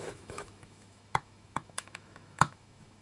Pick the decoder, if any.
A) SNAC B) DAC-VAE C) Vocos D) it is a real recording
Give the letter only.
B